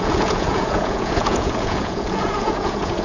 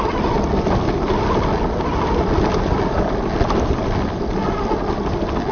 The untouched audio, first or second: second